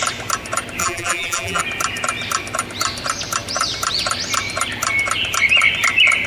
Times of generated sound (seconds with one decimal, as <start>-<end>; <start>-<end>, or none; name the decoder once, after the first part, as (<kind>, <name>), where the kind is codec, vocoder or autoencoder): 0.8-1.6 (vocoder, BigVGAN v2)